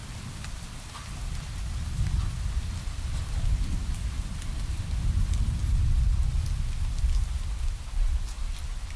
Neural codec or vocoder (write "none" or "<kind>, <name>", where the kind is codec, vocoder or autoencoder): none